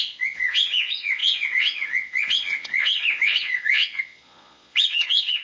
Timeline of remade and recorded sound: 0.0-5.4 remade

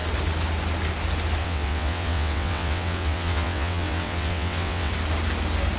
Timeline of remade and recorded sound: 0.0-1.4 recorded; 1.4-4.9 remade; 4.9-5.8 recorded